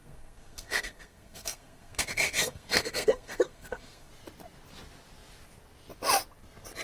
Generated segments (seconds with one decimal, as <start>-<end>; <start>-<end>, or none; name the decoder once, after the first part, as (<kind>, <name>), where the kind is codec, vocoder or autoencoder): 0.0-4.1 (codec, SNAC)